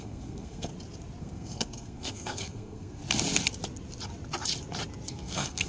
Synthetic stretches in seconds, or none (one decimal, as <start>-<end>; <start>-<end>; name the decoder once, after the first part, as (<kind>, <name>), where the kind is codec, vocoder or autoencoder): 0.0-0.7 (codec, SNAC); 1.2-3.0; 5.1-5.7